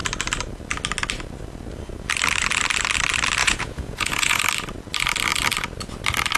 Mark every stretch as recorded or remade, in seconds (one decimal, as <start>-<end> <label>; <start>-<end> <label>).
0.0-3.4 recorded; 3.4-4.4 remade; 4.4-6.4 recorded